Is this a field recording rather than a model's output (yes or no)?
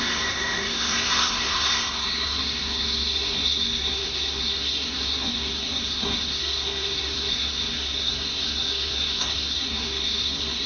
no